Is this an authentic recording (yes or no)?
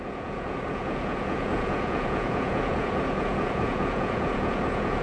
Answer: no